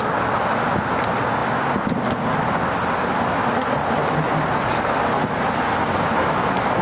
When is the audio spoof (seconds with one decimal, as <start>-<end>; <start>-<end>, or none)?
none